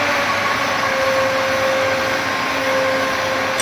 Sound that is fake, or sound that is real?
real